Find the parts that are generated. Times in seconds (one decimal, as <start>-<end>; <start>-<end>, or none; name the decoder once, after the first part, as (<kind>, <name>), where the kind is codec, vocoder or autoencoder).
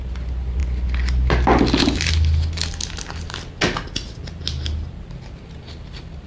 none